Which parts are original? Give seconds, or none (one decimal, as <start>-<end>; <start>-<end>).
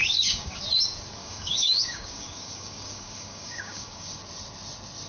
0.6-1.2; 4.2-5.1